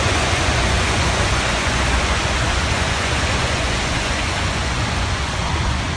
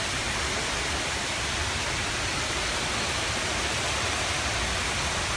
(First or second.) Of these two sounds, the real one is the second